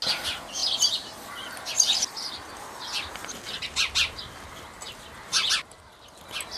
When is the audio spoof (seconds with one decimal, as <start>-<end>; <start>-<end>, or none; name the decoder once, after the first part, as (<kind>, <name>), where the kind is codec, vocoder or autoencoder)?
none